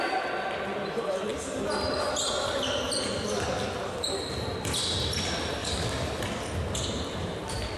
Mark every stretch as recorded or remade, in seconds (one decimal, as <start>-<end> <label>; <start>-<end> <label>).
0.0-5.6 recorded; 5.6-6.2 remade; 6.2-7.8 recorded